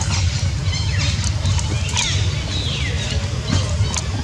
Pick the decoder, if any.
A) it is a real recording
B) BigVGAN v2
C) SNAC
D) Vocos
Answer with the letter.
A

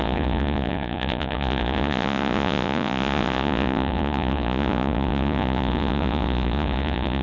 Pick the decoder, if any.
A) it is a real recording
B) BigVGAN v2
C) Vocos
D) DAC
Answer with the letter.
C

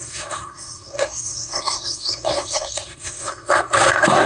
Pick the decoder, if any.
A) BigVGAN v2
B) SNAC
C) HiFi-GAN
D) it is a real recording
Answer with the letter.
B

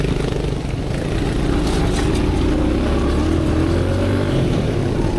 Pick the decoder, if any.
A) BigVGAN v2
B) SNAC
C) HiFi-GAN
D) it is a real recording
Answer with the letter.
D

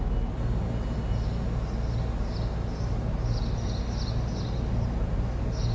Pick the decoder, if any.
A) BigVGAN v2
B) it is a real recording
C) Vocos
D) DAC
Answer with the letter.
B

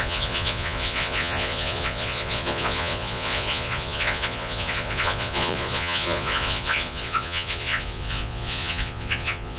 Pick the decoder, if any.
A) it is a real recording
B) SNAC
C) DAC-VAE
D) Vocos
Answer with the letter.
D